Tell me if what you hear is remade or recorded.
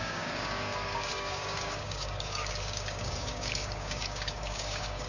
remade